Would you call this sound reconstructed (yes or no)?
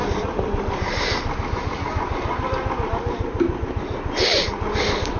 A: no